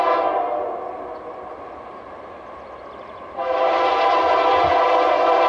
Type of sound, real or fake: real